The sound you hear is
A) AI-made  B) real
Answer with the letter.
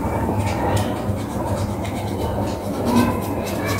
B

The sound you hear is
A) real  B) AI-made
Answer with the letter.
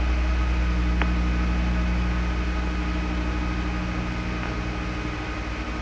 A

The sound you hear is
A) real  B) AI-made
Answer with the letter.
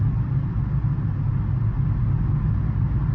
A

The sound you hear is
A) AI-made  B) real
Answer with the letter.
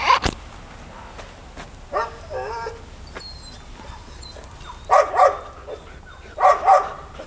B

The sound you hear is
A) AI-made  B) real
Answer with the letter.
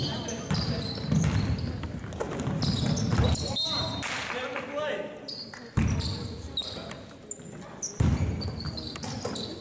B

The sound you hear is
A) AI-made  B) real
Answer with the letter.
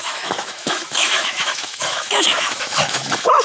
A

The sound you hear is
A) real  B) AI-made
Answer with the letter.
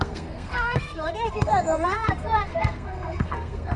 B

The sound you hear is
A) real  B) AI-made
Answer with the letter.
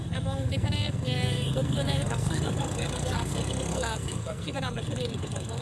B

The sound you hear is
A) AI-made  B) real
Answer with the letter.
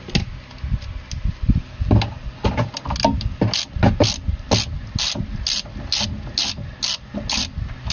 B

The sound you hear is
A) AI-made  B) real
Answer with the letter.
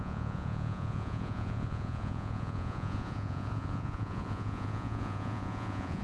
A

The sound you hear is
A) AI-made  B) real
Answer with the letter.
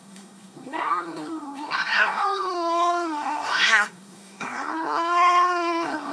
A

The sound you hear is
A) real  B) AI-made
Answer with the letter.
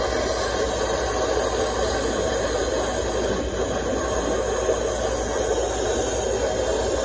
A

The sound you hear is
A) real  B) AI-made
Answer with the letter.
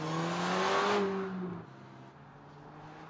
A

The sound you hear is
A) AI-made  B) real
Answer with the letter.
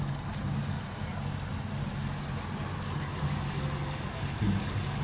B